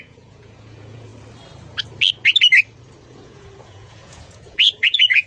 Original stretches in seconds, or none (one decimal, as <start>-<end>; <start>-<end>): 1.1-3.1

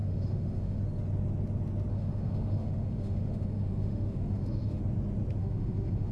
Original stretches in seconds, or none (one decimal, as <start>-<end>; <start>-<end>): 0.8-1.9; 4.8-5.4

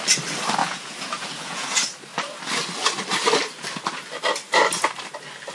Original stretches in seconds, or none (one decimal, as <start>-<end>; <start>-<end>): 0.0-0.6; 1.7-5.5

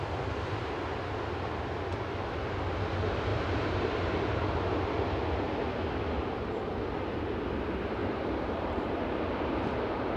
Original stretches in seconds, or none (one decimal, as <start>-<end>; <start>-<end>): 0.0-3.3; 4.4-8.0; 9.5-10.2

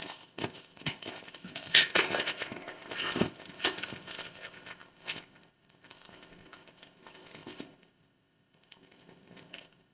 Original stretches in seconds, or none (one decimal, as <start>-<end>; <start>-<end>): none

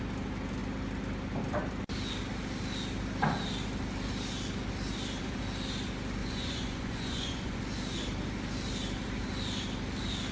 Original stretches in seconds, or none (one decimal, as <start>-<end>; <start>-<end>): 0.0-6.2; 7.6-10.3

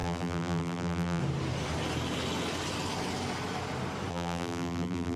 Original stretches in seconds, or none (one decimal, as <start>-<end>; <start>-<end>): 1.2-4.1

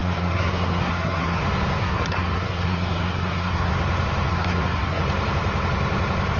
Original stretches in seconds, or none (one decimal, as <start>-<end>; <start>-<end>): 1.4-1.8; 3.7-4.3; 5.0-6.4